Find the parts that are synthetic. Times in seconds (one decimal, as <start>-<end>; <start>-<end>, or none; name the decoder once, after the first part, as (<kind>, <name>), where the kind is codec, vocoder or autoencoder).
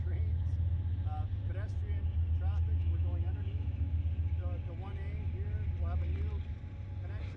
2.8-4.0 (autoencoder, DAC-VAE)